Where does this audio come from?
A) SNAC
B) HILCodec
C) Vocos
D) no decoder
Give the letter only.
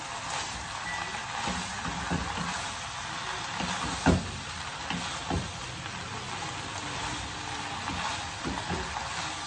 D